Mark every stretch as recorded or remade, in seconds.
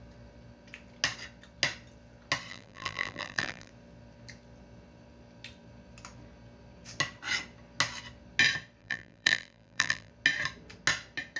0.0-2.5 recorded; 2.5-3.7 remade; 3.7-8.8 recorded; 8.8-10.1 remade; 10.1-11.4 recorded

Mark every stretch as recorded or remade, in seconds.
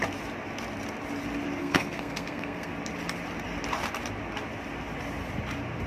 0.0-1.6 recorded; 1.6-2.7 remade; 2.7-5.9 recorded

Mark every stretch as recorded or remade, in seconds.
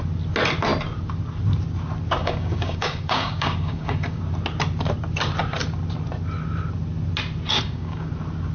0.0-2.2 recorded; 2.2-4.2 remade; 4.2-7.5 recorded; 7.5-8.1 remade; 8.1-8.5 recorded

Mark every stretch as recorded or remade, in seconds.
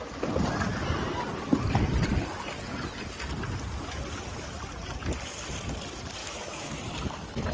0.0-6.2 recorded; 6.2-6.8 remade; 6.8-7.5 recorded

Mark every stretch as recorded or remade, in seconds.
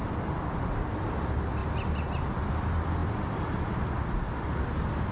0.0-5.1 recorded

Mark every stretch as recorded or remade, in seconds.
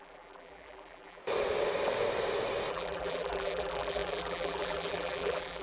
0.0-1.2 remade; 1.2-2.7 recorded; 2.7-5.6 remade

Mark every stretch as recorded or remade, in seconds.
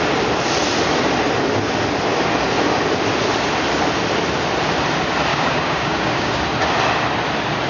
0.0-5.3 recorded; 5.3-6.3 remade; 6.3-7.7 recorded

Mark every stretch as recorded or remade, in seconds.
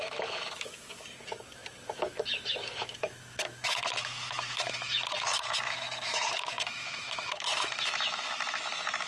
0.0-9.1 remade